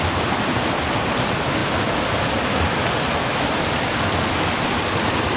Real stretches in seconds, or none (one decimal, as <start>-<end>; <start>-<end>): 0.0-5.4